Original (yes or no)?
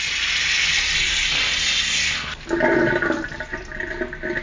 yes